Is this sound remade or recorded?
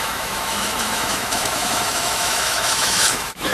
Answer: remade